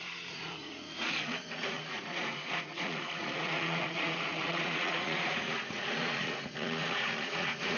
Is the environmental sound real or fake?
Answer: fake